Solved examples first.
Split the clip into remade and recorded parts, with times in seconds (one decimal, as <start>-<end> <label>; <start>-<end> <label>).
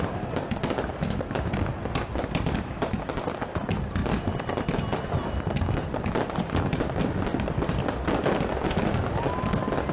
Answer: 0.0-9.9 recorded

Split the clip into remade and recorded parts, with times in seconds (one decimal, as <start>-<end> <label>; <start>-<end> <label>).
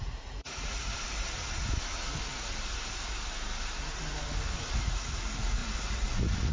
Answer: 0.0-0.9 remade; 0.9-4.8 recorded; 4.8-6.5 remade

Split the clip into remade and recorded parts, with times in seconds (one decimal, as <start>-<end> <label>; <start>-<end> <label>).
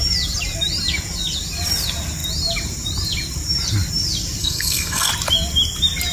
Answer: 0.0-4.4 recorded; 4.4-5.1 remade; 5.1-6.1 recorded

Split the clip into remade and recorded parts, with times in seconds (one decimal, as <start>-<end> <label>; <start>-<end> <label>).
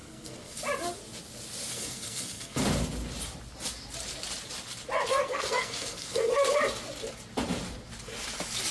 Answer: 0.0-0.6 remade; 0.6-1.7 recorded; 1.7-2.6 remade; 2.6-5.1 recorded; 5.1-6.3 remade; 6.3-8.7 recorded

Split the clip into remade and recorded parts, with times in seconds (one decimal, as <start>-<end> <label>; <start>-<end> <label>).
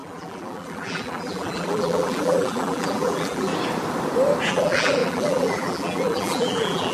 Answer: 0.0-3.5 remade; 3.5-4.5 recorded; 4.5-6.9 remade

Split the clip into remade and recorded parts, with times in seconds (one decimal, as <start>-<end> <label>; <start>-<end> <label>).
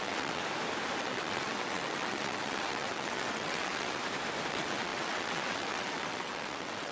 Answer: 0.0-0.4 remade; 0.4-1.0 recorded; 1.0-4.0 remade; 4.0-4.5 recorded; 4.5-6.9 remade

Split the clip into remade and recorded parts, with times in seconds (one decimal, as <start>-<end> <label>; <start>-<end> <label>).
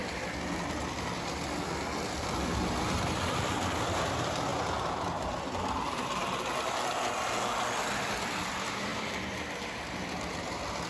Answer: 0.0-10.9 recorded